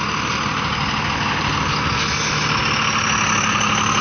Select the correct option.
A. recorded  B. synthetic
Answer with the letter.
A